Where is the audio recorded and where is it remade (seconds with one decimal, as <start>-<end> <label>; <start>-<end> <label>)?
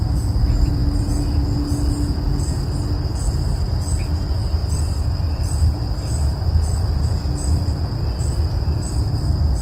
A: 0.0-9.6 recorded